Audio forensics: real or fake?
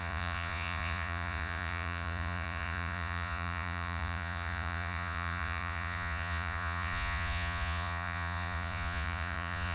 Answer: fake